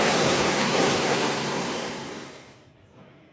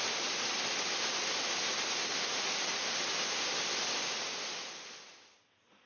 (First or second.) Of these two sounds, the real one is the second